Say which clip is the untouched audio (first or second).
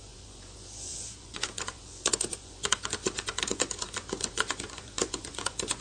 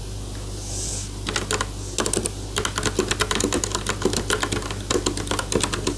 second